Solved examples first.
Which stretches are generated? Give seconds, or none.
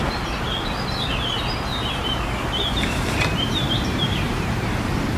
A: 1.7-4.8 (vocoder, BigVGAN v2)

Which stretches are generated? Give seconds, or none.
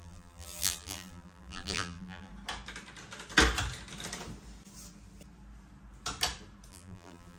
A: 0.0-2.3 (vocoder, BigVGAN v2); 6.7-7.4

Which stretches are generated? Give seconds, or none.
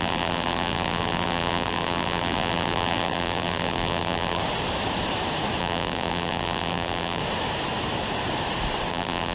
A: 0.0-4.4 (vocoder, BigVGAN v2); 5.6-7.2; 8.9-9.3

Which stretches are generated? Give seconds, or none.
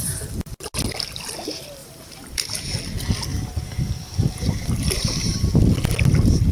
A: 1.8-2.8 (vocoder, BigVGAN v2); 3.3-5.5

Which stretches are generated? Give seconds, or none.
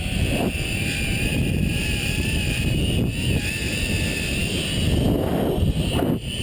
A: 1.3-3.1 (vocoder, BigVGAN v2)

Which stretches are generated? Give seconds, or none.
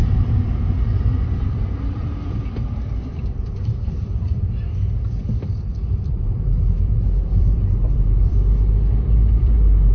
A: 1.5-9.9 (vocoder, BigVGAN v2)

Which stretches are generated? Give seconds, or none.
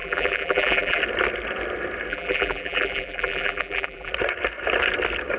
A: 0.0-1.0 (vocoder, BigVGAN v2); 2.1-4.1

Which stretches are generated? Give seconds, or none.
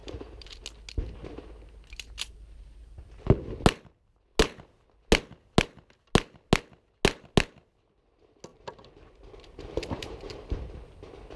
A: 0.0-0.6 (vocoder, BigVGAN v2); 8.5-10.7